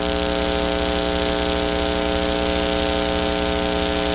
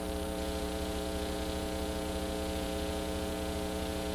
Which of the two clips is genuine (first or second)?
first